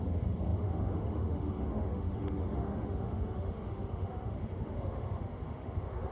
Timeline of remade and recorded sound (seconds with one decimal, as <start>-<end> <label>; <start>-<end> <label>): 0.0-6.1 remade